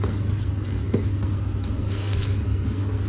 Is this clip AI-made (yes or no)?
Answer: yes